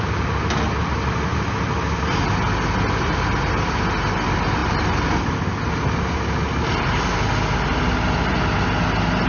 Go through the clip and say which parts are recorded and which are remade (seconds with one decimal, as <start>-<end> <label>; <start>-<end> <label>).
0.0-9.3 recorded